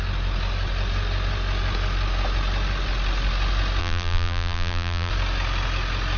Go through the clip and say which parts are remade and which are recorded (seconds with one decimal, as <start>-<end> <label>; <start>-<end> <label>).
0.0-3.8 recorded; 3.8-5.1 remade; 5.1-6.2 recorded